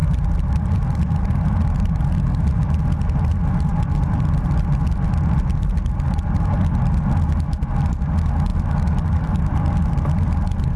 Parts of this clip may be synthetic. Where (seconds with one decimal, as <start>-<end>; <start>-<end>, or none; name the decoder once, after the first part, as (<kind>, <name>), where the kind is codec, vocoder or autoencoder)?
0.0-1.0 (vocoder, BigVGAN v2); 8.5-9.7